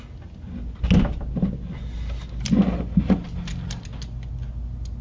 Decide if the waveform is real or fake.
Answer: real